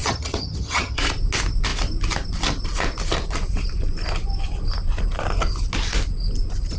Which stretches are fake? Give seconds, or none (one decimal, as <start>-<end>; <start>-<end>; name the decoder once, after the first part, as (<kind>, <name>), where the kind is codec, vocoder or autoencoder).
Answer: 0.0-1.0 (vocoder, HiFi-GAN)